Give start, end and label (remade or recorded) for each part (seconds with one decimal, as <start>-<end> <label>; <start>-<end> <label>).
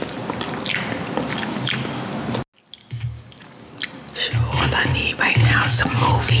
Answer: 0.0-2.8 recorded; 2.8-3.7 remade; 3.7-5.7 recorded; 5.7-6.4 remade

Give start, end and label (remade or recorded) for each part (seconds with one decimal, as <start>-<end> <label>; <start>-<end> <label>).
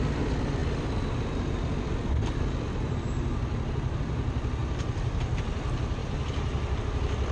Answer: 0.0-0.6 recorded; 0.6-4.1 remade; 4.1-4.6 recorded; 4.6-5.4 remade; 5.4-7.3 recorded